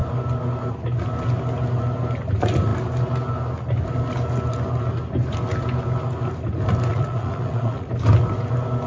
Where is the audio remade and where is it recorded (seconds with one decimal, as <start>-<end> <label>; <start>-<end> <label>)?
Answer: 0.0-6.9 recorded; 6.9-7.9 remade; 7.9-8.9 recorded